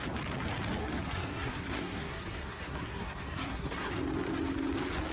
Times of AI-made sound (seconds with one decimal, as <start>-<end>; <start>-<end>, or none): 0.8-3.9